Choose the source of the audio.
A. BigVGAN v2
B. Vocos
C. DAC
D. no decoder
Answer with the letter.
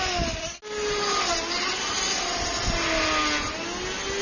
D